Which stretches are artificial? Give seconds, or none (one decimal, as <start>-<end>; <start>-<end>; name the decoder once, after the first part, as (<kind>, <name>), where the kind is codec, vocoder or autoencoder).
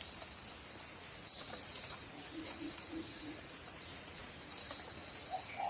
0.9-4.3 (vocoder, Vocos); 5.0-5.7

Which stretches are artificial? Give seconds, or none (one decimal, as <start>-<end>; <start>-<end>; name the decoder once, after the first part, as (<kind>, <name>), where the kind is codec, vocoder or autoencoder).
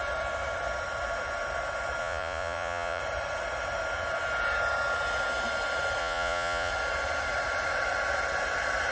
2.0-3.0 (vocoder, Vocos); 6.0-6.7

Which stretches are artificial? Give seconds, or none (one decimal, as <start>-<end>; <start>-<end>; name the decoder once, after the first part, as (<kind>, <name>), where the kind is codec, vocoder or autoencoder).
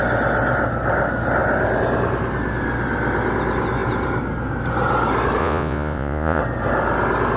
5.4-6.4 (vocoder, Vocos)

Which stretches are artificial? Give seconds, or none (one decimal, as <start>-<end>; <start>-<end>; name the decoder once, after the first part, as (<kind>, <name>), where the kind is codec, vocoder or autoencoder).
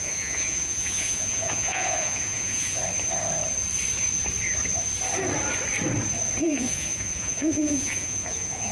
0.0-2.8 (vocoder, Vocos); 6.4-8.7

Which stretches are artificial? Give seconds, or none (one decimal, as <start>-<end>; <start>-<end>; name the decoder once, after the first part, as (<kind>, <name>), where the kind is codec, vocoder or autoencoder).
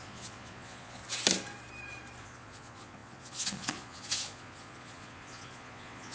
0.0-1.0 (vocoder, Vocos); 2.2-6.1